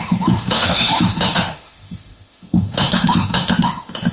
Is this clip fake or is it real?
fake